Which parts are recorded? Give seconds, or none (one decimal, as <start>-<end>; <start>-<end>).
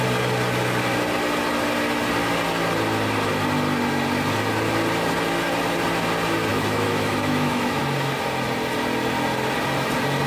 0.0-6.5; 7.8-10.3